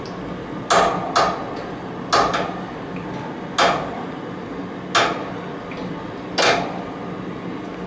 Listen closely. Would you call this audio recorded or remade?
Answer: recorded